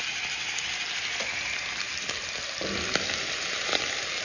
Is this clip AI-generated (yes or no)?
no